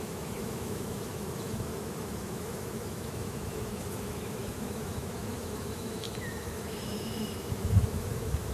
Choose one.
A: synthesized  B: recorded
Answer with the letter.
A